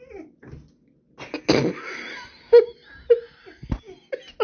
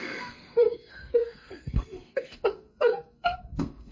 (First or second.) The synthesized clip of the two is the second